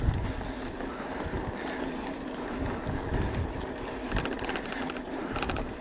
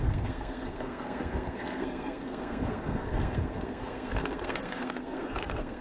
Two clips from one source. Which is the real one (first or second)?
first